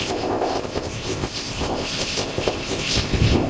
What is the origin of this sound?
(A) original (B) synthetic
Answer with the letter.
B